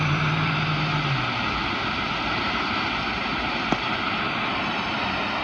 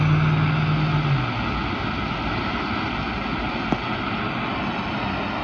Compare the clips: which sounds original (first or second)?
second